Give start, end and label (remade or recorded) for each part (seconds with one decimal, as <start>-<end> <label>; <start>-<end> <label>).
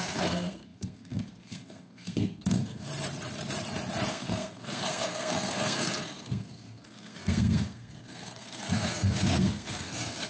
0.0-2.9 remade; 2.9-4.1 recorded; 4.1-10.3 remade